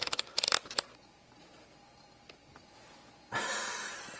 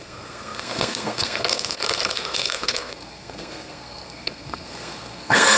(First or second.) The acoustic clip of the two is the first